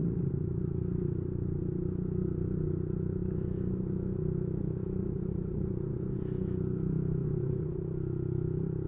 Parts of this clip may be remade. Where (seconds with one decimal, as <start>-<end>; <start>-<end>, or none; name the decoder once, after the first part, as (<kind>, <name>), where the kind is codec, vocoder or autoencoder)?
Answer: 5.0-6.2 (vocoder, Vocos); 7.2-7.8